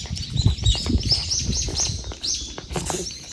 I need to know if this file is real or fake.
real